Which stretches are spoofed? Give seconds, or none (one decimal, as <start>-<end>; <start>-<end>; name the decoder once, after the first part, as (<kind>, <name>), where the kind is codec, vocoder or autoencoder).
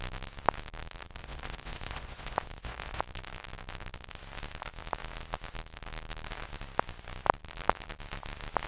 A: 1.2-3.0 (vocoder, Vocos)